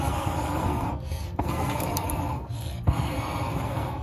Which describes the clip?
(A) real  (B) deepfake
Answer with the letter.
B